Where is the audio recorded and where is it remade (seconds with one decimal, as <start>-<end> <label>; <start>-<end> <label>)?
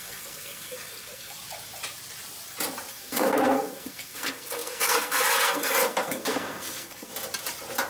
0.0-1.4 remade; 1.4-2.9 recorded; 2.9-7.1 remade; 7.1-7.9 recorded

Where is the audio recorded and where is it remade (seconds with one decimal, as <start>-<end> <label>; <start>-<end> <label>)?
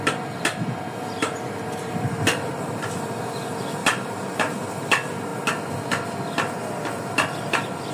0.0-1.2 recorded; 1.2-2.7 remade; 2.7-3.8 recorded; 3.8-4.7 remade; 4.7-7.9 recorded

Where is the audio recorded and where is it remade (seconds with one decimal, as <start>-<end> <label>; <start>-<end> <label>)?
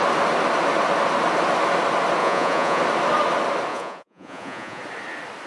0.0-2.2 recorded; 2.2-2.8 remade; 2.8-3.7 recorded; 3.7-4.8 remade; 4.8-5.5 recorded